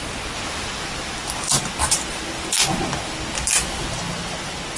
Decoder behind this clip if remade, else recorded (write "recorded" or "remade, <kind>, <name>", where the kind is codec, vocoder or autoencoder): recorded